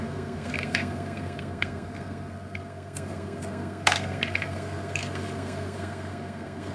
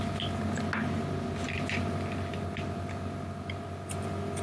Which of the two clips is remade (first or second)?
first